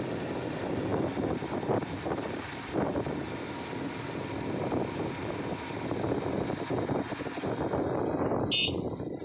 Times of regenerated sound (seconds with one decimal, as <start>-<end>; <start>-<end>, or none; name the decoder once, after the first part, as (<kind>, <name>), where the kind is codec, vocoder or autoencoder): none